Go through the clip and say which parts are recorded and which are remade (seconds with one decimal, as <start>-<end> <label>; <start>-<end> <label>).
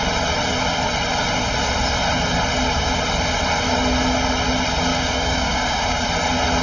0.0-4.9 recorded; 4.9-6.0 remade; 6.0-6.6 recorded